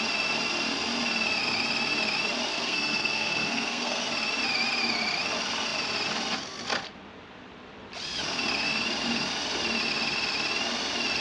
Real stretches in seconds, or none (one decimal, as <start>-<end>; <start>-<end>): 0.0-2.5; 4.0-11.2